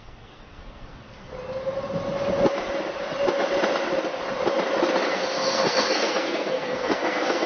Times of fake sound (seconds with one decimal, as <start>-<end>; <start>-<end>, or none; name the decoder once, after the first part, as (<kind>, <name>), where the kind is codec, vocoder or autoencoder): 0.0-1.3 (codec, SNAC); 5.1-7.5